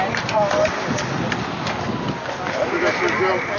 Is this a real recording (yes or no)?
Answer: yes